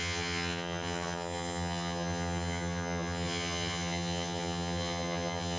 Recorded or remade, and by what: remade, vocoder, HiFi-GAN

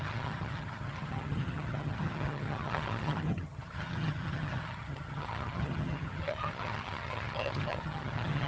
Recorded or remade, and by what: remade, vocoder, HiFi-GAN